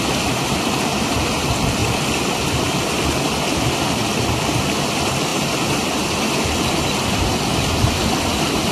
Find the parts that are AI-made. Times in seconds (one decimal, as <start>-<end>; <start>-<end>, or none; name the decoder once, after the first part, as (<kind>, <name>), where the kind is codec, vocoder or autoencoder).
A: none